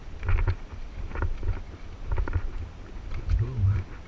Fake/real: real